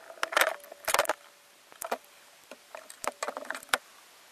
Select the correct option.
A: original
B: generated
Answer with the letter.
A